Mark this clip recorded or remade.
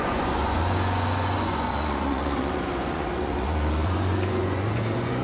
remade